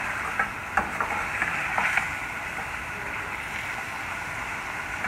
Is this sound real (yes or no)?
yes